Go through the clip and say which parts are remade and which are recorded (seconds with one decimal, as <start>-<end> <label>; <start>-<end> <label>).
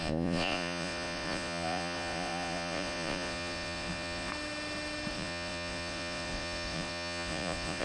0.0-4.3 remade; 4.3-5.1 recorded; 5.1-7.8 remade